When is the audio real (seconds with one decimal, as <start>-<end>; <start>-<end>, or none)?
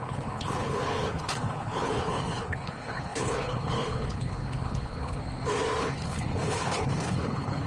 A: 5.2-5.8